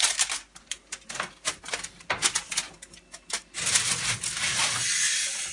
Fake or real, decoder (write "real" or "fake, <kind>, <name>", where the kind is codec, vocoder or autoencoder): real